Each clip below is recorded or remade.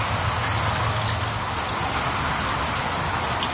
recorded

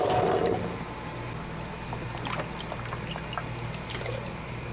recorded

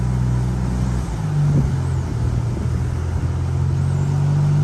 recorded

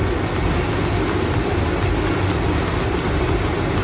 recorded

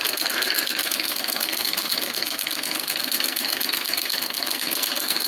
remade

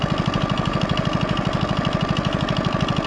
recorded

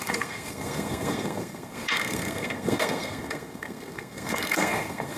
remade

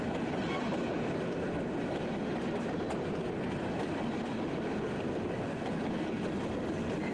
recorded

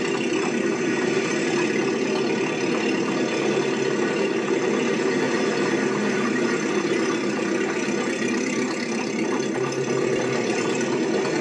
recorded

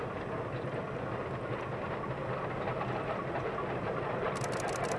recorded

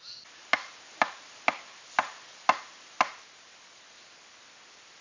recorded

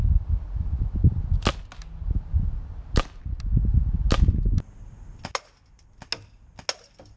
recorded